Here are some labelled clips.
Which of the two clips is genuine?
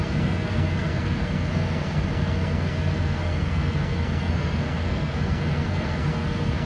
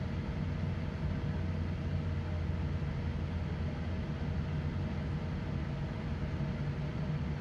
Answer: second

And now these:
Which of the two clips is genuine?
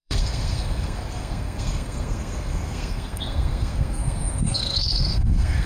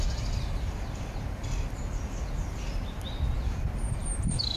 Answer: second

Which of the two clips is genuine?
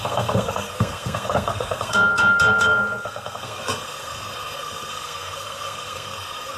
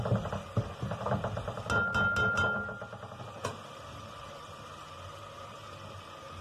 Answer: second